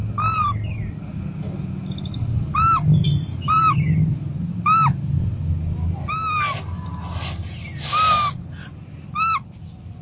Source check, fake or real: real